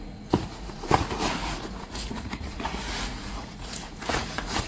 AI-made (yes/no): yes